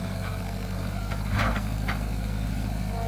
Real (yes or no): no